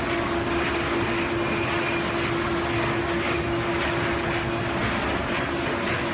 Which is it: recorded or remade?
recorded